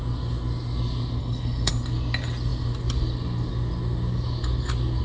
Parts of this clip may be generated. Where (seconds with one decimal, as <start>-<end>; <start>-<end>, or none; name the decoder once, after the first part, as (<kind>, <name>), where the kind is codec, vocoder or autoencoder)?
1.2-1.7 (codec, HILCodec)

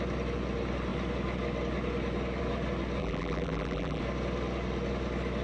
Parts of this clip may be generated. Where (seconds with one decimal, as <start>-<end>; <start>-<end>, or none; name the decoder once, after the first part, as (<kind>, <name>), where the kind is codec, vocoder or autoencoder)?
3.0-4.0 (vocoder, BigVGAN v2)

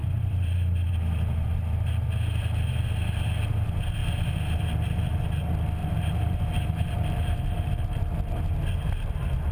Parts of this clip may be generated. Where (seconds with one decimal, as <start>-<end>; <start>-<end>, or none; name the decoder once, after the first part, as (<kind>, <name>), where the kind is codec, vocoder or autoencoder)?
0.0-1.9 (vocoder, BigVGAN v2); 5.8-8.4

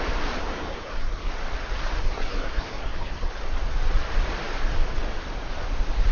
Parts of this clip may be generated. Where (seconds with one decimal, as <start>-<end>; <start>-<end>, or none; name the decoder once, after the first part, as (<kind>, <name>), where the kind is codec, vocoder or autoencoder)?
0.4-1.3 (codec, SNAC); 2.0-3.3

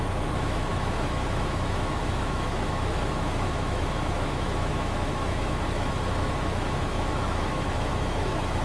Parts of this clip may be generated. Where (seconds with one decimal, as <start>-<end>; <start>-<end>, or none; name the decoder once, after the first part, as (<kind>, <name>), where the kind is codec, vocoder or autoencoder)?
0.0-8.6 (autoencoder, DAC-VAE)